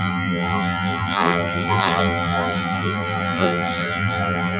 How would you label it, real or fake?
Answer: fake